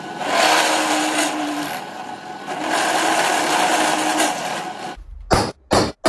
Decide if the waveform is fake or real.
real